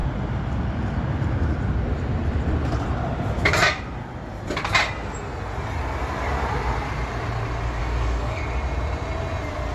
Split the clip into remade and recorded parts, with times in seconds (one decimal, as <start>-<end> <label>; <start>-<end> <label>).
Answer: 0.0-7.8 recorded; 7.8-8.4 remade; 8.4-9.7 recorded